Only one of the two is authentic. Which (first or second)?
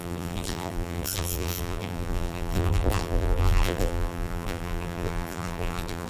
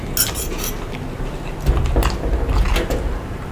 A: second